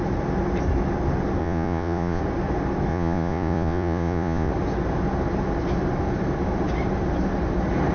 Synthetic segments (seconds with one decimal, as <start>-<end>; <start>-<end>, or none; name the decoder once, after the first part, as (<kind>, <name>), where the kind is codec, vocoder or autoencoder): 1.4-2.2 (vocoder, Vocos); 2.9-4.5